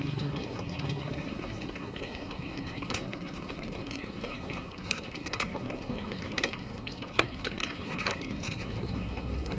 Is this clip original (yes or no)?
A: no